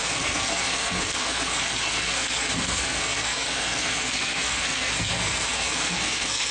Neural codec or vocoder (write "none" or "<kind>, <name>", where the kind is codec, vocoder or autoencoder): codec, SNAC